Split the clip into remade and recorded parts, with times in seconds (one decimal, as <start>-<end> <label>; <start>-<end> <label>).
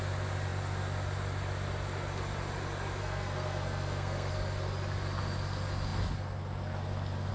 0.0-3.0 recorded; 3.0-4.3 remade; 4.3-7.3 recorded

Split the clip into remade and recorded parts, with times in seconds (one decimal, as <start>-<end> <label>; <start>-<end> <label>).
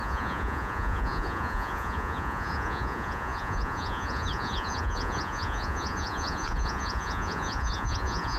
0.0-8.4 remade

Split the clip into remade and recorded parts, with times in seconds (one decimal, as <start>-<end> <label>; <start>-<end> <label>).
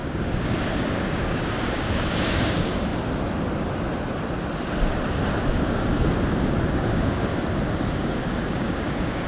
0.0-2.9 remade; 2.9-5.5 recorded; 5.5-7.3 remade; 7.3-7.9 recorded; 7.9-9.3 remade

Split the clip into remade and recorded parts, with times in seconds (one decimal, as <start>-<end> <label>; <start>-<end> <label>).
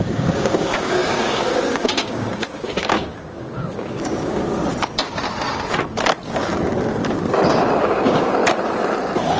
0.0-4.4 remade; 4.4-7.7 recorded; 7.7-8.4 remade; 8.4-9.4 recorded